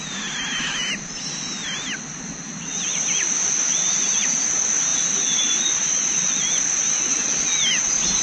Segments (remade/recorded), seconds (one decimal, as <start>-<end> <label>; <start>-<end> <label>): 0.0-8.2 recorded

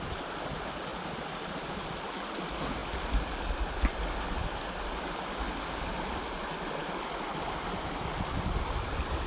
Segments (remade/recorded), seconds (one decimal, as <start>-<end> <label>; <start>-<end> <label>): 0.0-9.3 recorded

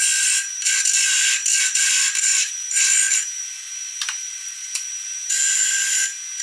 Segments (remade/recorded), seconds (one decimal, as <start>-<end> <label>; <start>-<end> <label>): 0.0-0.5 recorded; 0.5-1.9 remade; 1.9-2.3 recorded; 2.3-5.5 remade; 5.5-6.4 recorded

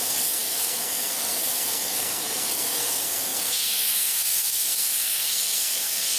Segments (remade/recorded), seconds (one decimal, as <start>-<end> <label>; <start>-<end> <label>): 0.0-6.2 remade

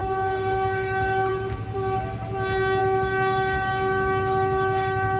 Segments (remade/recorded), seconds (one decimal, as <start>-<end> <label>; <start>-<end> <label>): 0.0-1.3 remade; 1.3-2.8 recorded; 2.8-5.2 remade

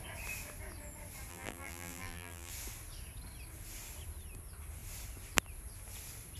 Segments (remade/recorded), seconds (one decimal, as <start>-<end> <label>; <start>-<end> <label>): 0.0-1.3 recorded; 1.3-2.5 remade; 2.5-6.4 recorded

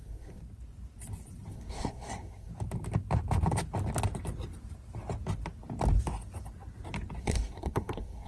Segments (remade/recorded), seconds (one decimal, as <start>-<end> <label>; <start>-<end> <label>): 0.0-0.4 remade; 0.4-1.5 recorded; 1.5-2.5 remade; 2.5-7.2 recorded; 7.2-8.3 remade

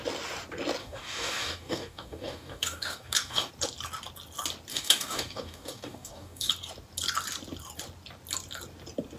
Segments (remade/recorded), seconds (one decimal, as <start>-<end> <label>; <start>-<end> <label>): 0.0-0.8 recorded; 0.8-3.5 remade; 3.5-4.7 recorded; 4.7-6.5 remade; 6.5-9.2 recorded